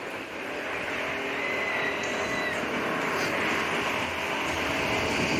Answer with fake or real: real